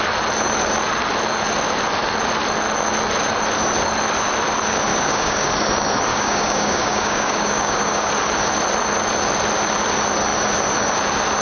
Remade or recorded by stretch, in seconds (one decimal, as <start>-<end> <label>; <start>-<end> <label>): 0.0-4.9 recorded; 4.9-5.5 remade; 5.5-6.1 recorded; 6.1-8.1 remade; 8.1-11.4 recorded